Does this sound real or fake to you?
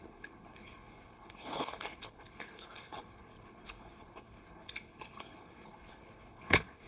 fake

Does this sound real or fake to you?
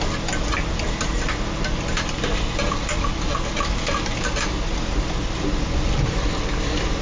real